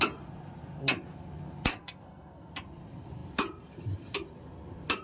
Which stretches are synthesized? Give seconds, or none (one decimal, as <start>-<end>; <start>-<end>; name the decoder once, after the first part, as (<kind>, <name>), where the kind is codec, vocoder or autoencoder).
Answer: 1.8-2.5 (codec, SNAC)